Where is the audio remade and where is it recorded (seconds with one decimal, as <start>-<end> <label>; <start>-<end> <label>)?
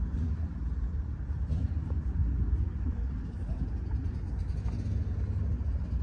0.0-2.2 remade; 2.2-2.8 recorded; 2.8-3.4 remade; 3.4-6.0 recorded